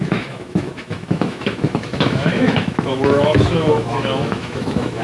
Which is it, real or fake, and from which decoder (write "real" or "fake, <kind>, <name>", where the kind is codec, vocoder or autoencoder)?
fake, autoencoder, DAC-VAE